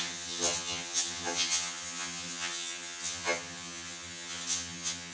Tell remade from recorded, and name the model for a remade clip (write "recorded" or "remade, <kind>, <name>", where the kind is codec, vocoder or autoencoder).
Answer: remade, vocoder, HiFi-GAN